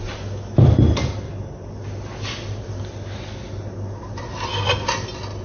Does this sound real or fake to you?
real